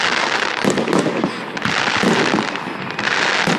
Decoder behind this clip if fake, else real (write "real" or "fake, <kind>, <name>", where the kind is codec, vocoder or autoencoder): real